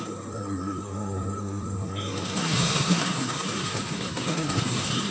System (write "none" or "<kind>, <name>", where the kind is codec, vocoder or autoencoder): codec, SNAC